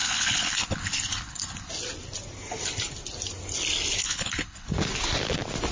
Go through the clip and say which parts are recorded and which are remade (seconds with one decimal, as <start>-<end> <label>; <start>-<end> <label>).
0.0-1.7 remade; 1.7-4.0 recorded; 4.0-4.7 remade; 4.7-5.7 recorded